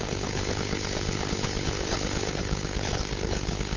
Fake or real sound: fake